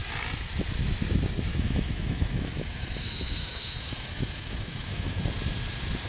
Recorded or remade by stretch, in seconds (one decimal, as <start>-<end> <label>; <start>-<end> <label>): 0.0-1.5 recorded; 1.5-5.2 remade; 5.2-6.1 recorded